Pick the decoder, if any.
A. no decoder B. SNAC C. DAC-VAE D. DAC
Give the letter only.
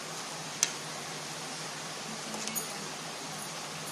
A